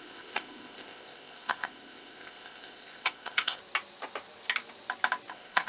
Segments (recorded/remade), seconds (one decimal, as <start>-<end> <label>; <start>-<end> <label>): 0.0-3.6 remade; 3.6-5.3 recorded; 5.3-5.7 remade